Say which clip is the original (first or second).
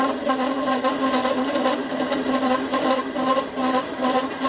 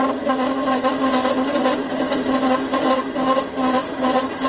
second